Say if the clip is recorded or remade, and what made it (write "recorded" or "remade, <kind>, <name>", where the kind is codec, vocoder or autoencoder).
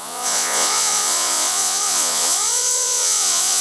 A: remade, vocoder, Vocos